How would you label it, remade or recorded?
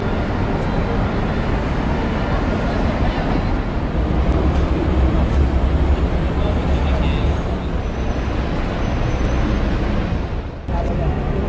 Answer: recorded